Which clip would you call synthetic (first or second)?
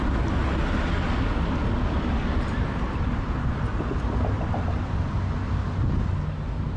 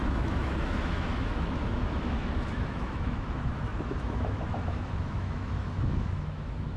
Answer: second